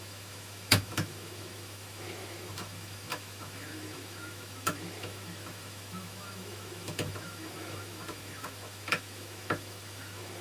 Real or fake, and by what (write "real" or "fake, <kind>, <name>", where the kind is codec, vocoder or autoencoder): fake, autoencoder, DAC-VAE